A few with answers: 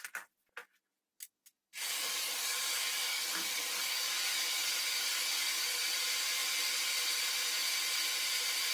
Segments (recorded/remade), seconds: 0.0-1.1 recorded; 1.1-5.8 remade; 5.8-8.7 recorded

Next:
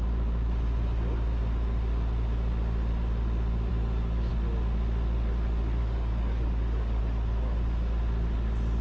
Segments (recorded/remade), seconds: 0.0-3.7 recorded; 3.7-4.3 remade; 4.3-5.8 recorded; 5.8-7.0 remade; 7.0-8.8 recorded

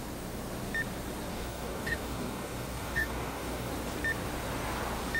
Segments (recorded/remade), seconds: 0.0-1.3 recorded; 1.3-3.7 remade; 3.7-5.2 recorded

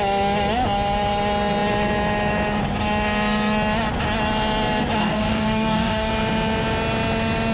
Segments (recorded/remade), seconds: 0.0-5.0 recorded; 5.0-6.1 remade; 6.1-7.5 recorded

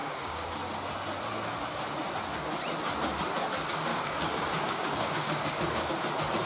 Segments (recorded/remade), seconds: 0.0-0.5 remade; 0.5-3.9 recorded; 3.9-5.9 remade; 5.9-6.5 recorded

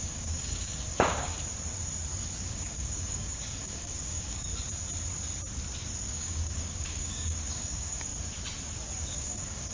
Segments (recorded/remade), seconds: 0.0-1.3 remade; 1.3-2.4 recorded; 2.4-4.5 remade; 4.5-6.1 recorded; 6.1-8.1 remade; 8.1-9.0 recorded; 9.0-9.7 remade

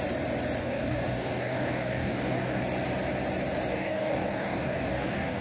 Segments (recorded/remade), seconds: 0.0-0.6 recorded; 0.6-2.6 remade; 2.6-3.7 recorded; 3.7-5.4 remade

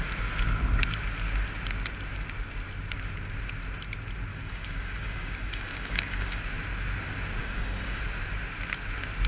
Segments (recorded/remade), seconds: 0.0-4.3 recorded; 4.3-6.4 remade; 6.4-7.4 recorded; 7.4-8.0 remade; 8.0-9.3 recorded